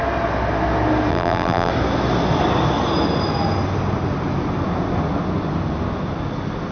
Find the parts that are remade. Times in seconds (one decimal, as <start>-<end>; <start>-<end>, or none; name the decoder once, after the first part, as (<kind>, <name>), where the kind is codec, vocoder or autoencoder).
1.1-1.7 (vocoder, BigVGAN v2)